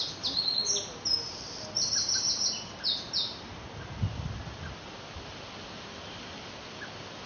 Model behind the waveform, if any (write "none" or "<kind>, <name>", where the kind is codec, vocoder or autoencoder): none